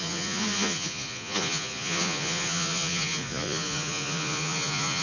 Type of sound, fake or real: fake